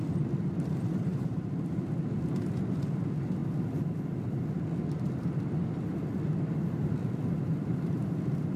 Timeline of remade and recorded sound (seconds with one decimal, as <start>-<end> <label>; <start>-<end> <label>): 0.0-1.1 recorded; 1.1-1.8 remade; 1.8-8.6 recorded